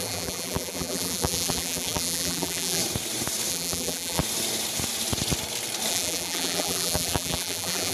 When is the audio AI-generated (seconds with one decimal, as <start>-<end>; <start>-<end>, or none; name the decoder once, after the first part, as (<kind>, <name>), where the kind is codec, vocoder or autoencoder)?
0.0-2.8 (vocoder, BigVGAN v2); 3.5-4.2; 5.9-7.9

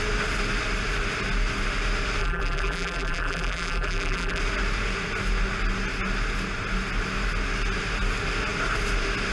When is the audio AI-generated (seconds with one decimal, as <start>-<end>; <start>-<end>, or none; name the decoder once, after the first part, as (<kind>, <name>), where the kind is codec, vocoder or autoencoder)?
2.2-4.4 (vocoder, BigVGAN v2)